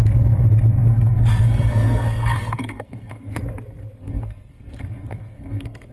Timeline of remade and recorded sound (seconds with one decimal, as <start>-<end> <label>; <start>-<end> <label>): 0.0-0.9 recorded; 0.9-3.4 remade; 3.4-4.0 recorded; 4.0-5.9 remade

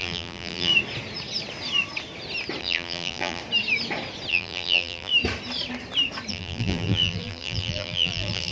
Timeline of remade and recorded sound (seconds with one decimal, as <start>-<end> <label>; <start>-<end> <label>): 0.0-0.7 remade; 0.7-2.6 recorded; 2.6-3.4 remade; 3.4-4.3 recorded; 4.3-5.1 remade; 5.1-6.3 recorded; 6.3-8.5 remade

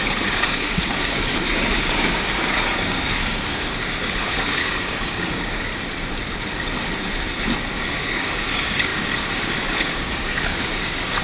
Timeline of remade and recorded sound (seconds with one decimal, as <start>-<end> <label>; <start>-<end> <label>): 0.0-5.7 remade; 5.7-7.7 recorded; 7.7-11.2 remade

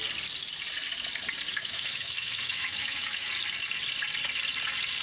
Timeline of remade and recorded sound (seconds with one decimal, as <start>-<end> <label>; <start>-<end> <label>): 0.0-1.5 recorded; 1.5-3.3 remade; 3.3-5.0 recorded

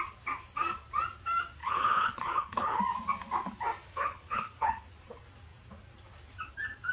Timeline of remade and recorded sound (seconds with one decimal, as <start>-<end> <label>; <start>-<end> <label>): 0.0-1.6 recorded; 1.6-2.8 remade; 2.8-3.9 recorded; 3.9-4.8 remade; 4.8-6.9 recorded

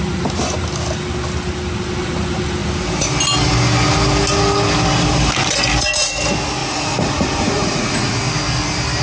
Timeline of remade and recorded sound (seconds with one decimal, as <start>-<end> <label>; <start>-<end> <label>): 0.0-6.6 recorded; 6.6-8.2 remade; 8.2-9.0 recorded

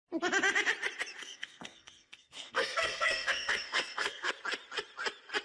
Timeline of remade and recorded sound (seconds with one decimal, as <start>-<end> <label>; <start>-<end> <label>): 0.0-1.2 recorded; 1.2-4.3 remade; 4.3-5.4 recorded

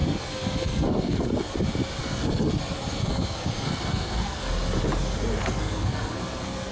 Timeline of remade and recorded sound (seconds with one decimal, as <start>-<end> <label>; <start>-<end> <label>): 0.0-1.5 remade; 1.5-2.0 recorded; 2.0-2.6 remade; 2.6-3.0 recorded; 3.0-4.5 remade; 4.5-5.4 recorded; 5.4-6.7 remade